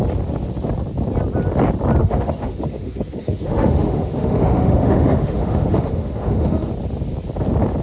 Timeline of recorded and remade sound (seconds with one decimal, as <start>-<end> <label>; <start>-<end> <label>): 0.0-2.0 recorded; 2.0-6.7 remade; 6.7-7.8 recorded